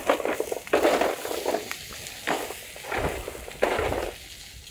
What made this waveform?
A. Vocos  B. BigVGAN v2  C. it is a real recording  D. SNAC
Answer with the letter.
C